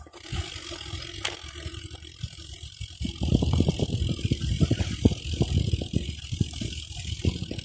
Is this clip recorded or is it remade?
recorded